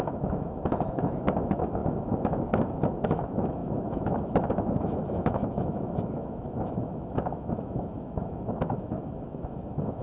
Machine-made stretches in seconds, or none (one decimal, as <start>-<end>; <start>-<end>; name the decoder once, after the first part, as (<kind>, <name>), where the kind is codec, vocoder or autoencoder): 0.0-10.0 (autoencoder, DAC-VAE)